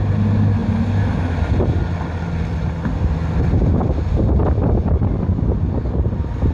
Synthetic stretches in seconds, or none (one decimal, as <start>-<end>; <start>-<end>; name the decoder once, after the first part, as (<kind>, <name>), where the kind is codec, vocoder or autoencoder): 3.7-6.1 (vocoder, BigVGAN v2)